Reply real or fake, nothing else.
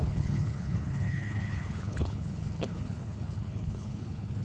fake